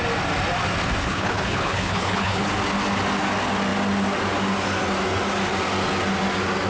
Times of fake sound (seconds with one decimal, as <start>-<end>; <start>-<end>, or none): 1.0-2.5